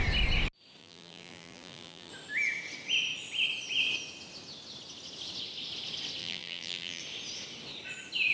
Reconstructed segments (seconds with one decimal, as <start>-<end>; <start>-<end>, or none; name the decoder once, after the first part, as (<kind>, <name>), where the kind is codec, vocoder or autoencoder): 0.8-2.1 (vocoder, BigVGAN v2); 6.2-7.0